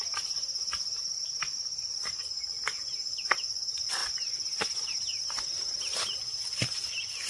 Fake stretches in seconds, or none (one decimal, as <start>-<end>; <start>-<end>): 0.0-1.0; 2.3-4.0